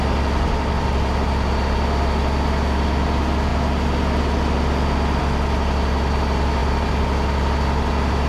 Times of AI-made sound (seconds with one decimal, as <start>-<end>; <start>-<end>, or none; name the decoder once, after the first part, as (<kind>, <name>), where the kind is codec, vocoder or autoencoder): none

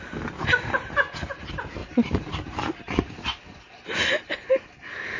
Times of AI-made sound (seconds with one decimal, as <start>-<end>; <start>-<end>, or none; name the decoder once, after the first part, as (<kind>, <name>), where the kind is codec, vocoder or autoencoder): 1.8-4.0 (vocoder, BigVGAN v2)